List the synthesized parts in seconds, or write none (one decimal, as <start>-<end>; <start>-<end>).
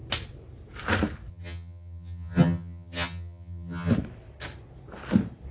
1.3-3.9